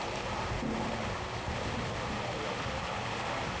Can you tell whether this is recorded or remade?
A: recorded